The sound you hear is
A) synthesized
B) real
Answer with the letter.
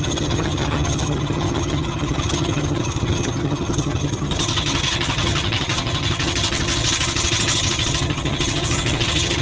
A